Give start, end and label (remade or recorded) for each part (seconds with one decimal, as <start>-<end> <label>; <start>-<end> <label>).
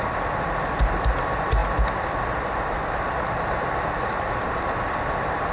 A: 0.0-5.5 recorded